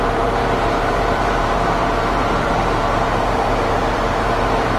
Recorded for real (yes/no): no